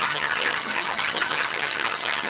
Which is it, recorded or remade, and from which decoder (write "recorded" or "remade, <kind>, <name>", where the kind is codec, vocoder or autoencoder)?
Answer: remade, vocoder, HiFi-GAN